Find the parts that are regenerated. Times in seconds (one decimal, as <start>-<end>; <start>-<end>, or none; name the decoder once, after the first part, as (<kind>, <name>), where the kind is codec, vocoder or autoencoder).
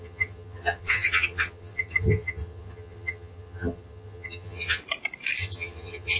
0.0-4.8 (vocoder, HiFi-GAN); 5.4-6.2